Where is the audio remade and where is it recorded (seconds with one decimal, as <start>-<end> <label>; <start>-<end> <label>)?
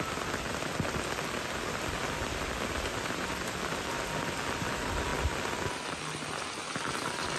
0.0-7.4 recorded